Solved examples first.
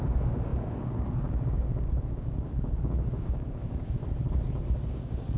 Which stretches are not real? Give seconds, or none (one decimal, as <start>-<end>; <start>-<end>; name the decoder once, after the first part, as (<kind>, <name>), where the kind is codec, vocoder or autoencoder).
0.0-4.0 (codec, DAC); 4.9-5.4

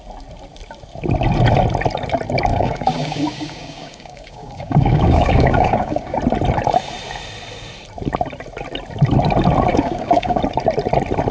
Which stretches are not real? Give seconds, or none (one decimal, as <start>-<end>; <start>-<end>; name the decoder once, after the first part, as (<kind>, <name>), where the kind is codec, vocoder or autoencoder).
2.5-6.2 (codec, DAC); 9.7-10.4

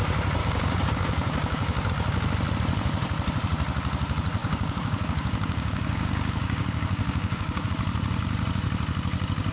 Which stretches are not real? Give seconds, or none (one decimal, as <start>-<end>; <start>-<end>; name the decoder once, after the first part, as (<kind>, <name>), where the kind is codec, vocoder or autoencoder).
0.4-1.9 (codec, DAC); 4.4-7.7

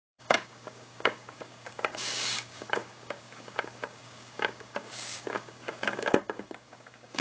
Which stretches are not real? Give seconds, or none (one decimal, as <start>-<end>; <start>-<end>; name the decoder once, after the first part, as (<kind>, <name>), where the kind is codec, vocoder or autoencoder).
0.0-7.2 (codec, DAC)

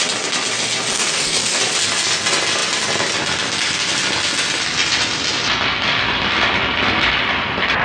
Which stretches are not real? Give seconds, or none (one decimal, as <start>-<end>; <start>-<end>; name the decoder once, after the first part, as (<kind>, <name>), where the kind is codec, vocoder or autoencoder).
0.9-1.6 (codec, DAC)